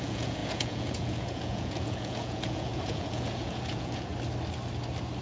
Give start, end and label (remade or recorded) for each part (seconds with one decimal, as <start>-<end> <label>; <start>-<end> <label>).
0.0-4.1 remade; 4.1-5.2 recorded

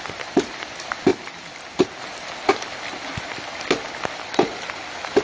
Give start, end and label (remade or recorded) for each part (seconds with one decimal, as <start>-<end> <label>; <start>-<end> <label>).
0.0-5.2 recorded